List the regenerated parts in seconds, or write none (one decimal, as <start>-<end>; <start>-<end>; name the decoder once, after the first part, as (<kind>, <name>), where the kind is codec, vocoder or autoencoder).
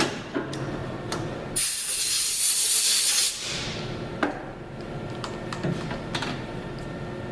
none